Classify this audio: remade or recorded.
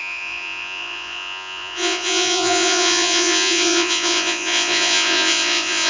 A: remade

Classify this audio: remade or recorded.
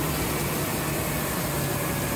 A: recorded